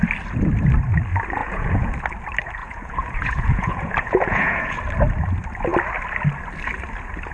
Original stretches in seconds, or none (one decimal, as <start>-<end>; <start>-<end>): 0.0-1.4; 1.9-2.6; 4.8-7.3